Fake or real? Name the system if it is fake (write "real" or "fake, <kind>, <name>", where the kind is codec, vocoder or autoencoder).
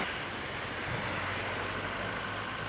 real